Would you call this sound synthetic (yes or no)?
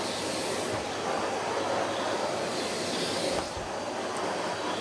no